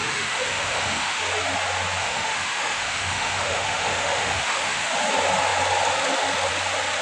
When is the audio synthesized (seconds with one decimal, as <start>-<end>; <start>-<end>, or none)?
0.0-1.2; 2.0-4.9